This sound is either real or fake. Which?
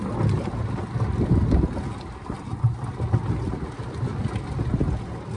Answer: real